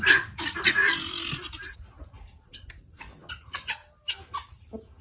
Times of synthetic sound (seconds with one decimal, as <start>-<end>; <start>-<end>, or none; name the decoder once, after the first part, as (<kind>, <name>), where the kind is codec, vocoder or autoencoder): 0.0-0.8 (vocoder, Vocos); 3.3-3.8